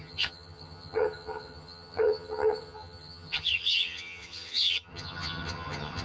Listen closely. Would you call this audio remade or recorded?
remade